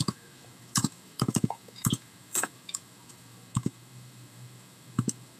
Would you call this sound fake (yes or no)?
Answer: yes